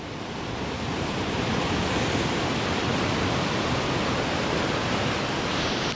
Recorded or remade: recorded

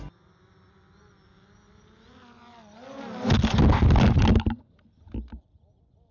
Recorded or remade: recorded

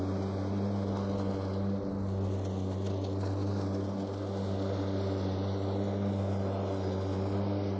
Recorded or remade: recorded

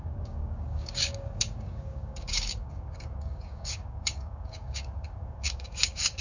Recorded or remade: remade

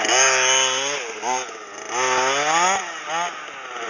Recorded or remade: recorded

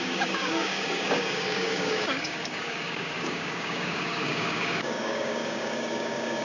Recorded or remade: remade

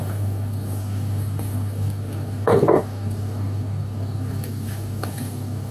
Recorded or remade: remade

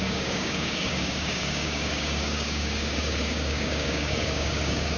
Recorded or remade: remade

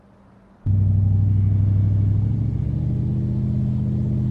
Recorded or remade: recorded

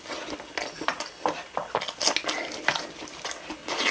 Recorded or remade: recorded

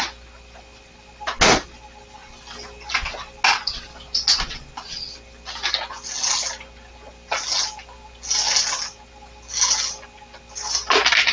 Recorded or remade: recorded